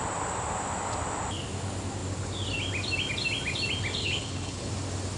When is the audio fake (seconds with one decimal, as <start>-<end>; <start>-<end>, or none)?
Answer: 4.0-4.7